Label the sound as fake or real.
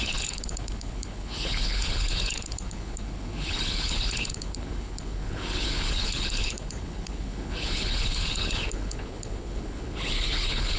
fake